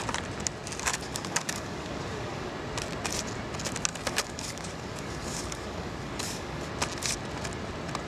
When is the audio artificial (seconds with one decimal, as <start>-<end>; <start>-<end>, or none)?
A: 0.9-2.5; 3.9-6.7